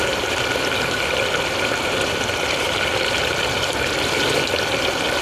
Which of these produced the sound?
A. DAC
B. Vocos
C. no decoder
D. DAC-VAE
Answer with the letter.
C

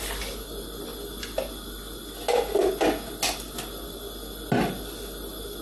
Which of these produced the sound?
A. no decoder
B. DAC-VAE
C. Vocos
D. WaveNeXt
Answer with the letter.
A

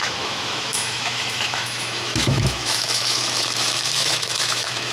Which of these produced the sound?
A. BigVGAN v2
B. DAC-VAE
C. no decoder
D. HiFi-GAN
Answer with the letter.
B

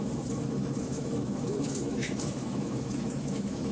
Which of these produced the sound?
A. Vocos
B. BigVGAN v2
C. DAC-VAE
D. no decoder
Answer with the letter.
C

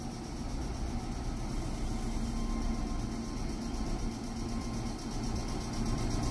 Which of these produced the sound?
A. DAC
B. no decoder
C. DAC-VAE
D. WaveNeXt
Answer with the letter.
B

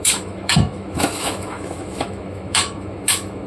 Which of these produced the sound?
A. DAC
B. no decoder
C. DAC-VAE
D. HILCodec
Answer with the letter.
C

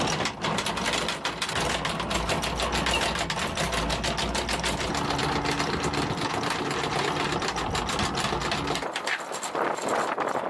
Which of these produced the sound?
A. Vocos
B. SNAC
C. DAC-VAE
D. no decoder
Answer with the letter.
D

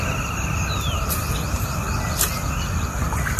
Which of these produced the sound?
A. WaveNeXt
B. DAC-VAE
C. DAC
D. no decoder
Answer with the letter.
D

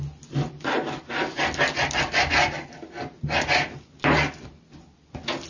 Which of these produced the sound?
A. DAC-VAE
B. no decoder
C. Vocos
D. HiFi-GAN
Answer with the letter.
B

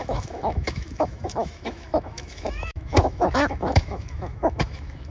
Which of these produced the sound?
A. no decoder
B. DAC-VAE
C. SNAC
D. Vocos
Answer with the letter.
B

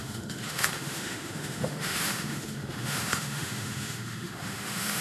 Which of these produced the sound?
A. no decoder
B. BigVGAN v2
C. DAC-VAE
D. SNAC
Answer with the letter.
C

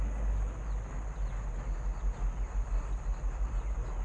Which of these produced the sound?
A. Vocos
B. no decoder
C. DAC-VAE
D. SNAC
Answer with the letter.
B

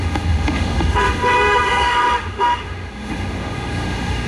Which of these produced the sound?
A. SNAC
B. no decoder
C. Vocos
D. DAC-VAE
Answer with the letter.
D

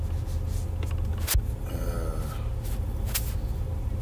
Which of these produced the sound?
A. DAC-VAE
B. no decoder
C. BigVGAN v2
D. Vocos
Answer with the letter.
B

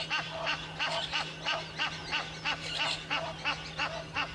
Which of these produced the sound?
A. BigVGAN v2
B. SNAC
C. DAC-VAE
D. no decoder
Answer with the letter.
D